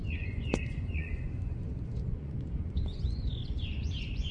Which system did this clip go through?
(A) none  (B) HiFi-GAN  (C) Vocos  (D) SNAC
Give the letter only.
C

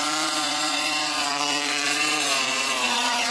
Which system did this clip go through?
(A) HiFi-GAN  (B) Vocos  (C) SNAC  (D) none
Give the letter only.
B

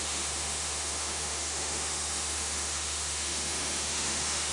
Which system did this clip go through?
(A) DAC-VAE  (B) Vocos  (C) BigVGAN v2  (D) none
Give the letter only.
A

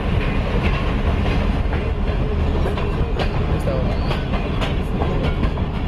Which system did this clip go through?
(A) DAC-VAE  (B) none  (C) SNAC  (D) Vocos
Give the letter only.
B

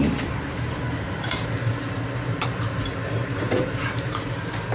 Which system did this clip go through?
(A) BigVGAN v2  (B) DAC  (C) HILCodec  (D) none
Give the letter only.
A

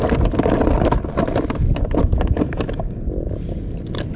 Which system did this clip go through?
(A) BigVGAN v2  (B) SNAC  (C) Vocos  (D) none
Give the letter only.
D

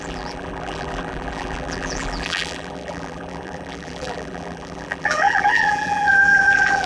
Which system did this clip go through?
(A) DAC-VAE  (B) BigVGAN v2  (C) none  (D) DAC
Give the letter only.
B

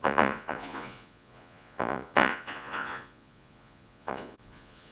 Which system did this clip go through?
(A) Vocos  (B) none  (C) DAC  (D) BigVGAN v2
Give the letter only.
A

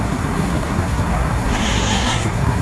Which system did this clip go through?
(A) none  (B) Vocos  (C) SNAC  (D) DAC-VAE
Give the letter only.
C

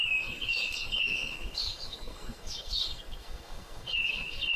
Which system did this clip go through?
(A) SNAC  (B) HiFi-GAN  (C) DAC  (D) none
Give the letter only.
A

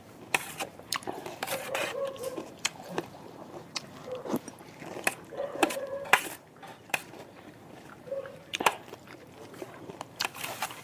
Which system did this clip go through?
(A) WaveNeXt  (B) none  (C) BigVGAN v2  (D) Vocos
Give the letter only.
C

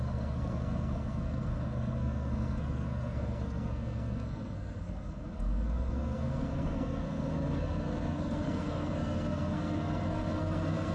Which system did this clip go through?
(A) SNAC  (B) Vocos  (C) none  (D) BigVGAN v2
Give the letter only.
A